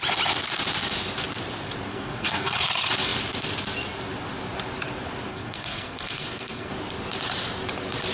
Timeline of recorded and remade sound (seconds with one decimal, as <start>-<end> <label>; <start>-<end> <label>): 0.0-1.9 recorded; 1.9-2.7 remade; 2.7-5.3 recorded; 5.3-6.7 remade; 6.7-8.1 recorded